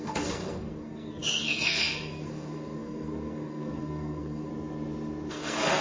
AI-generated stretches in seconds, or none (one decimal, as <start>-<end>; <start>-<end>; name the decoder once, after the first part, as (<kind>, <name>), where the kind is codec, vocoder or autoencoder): 0.0-4.5 (codec, SNAC); 5.3-5.8